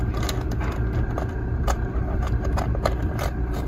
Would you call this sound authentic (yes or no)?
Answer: yes